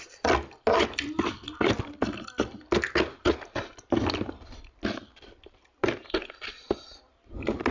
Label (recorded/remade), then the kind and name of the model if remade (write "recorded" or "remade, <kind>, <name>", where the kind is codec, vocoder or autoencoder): recorded